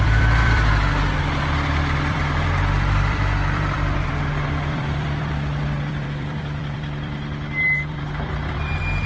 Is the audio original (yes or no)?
no